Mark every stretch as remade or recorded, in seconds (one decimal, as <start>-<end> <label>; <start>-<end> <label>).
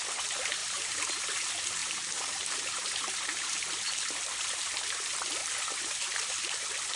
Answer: 0.0-0.6 recorded; 0.6-1.3 remade; 1.3-1.8 recorded; 1.8-3.7 remade; 3.7-5.4 recorded; 5.4-6.5 remade; 6.5-7.0 recorded